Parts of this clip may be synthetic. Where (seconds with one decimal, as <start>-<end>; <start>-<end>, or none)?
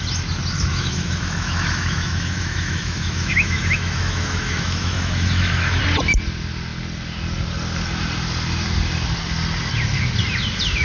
0.7-5.8